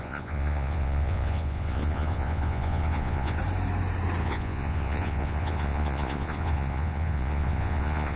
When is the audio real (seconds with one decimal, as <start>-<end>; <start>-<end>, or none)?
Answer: 3.4-4.2